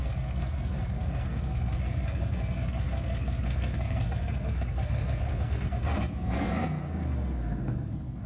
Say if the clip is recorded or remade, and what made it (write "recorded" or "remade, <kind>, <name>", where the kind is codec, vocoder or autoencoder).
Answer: remade, codec, SNAC